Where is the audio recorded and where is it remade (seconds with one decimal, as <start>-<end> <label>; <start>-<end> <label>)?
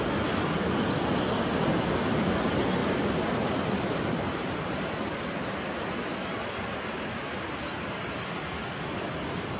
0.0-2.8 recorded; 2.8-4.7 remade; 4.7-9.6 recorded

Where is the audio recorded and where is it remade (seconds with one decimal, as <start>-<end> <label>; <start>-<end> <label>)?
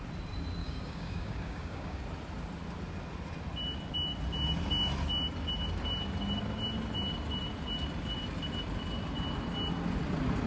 0.0-0.6 recorded; 0.6-2.0 remade; 2.0-10.5 recorded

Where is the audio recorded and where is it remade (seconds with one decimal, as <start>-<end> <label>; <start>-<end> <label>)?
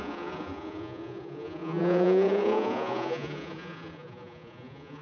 0.0-5.0 remade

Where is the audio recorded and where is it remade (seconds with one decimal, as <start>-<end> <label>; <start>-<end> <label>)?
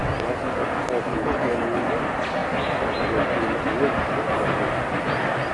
0.0-1.1 recorded; 1.1-1.8 remade; 1.8-5.5 recorded